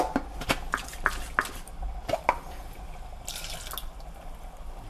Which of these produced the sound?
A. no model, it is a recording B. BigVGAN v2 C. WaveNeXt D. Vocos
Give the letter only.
A